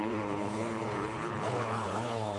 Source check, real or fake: fake